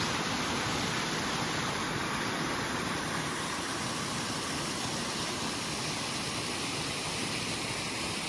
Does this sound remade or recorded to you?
recorded